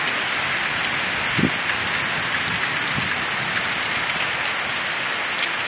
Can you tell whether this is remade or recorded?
recorded